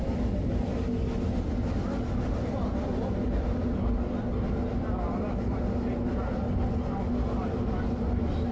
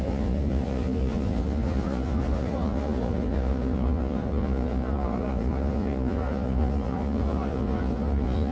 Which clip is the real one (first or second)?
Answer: first